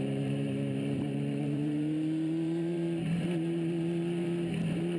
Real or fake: fake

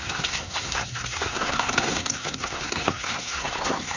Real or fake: fake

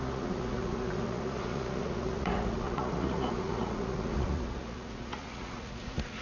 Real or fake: fake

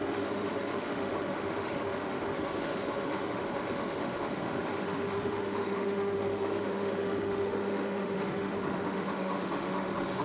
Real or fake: fake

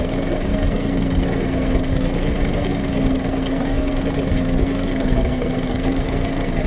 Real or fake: fake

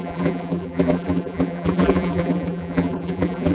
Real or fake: fake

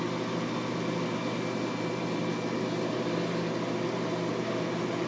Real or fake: real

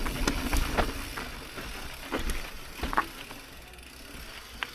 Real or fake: real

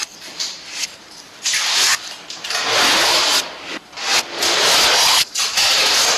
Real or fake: real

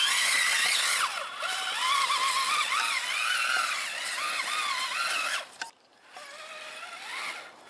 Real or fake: real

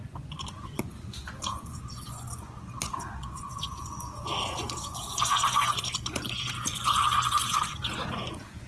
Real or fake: fake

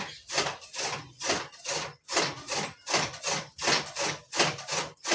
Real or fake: real